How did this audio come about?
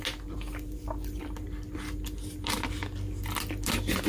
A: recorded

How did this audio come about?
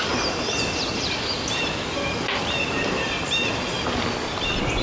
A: recorded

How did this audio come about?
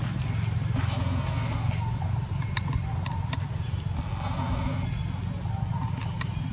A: recorded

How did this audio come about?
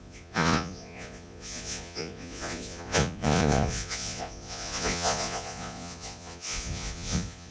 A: remade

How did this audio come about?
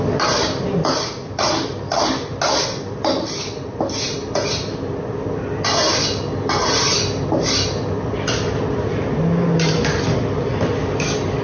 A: recorded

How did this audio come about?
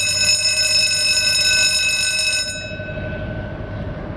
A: recorded